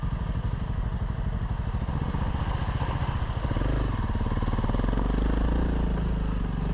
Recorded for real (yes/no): yes